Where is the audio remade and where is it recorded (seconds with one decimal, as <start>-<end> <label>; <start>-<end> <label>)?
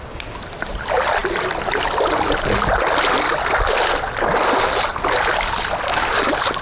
0.0-6.6 recorded